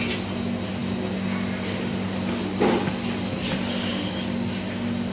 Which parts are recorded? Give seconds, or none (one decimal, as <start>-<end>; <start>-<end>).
0.0-5.1